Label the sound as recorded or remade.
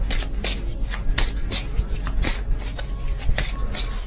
recorded